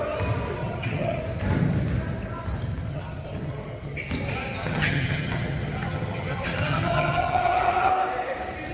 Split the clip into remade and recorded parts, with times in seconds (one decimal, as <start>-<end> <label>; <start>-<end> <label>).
0.0-0.6 recorded; 0.6-1.2 remade; 1.2-2.9 recorded; 2.9-4.0 remade; 4.0-4.6 recorded; 4.6-7.9 remade; 7.9-8.7 recorded